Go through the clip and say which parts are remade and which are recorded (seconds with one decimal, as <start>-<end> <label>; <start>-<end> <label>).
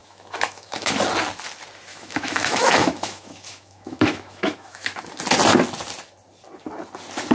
0.0-0.9 remade; 0.9-1.9 recorded; 1.9-5.0 remade; 5.0-7.3 recorded